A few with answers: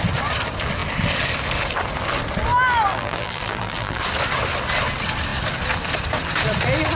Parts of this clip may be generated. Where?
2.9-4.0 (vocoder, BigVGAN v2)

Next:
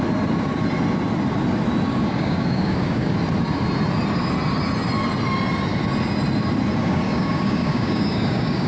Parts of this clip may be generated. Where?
1.9-3.1 (codec, DAC); 6.8-8.7

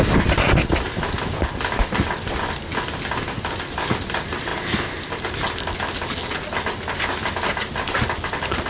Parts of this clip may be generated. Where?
none

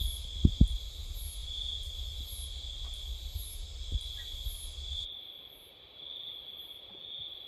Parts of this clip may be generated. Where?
none